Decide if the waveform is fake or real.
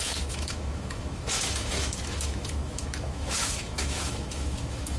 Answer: fake